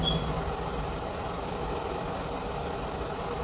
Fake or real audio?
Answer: real